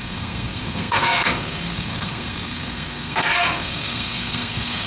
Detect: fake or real fake